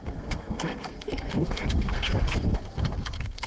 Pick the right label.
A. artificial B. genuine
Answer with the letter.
A